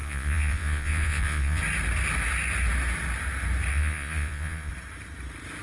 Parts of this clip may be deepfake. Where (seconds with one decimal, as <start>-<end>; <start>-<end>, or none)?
0.0-1.6; 3.7-4.7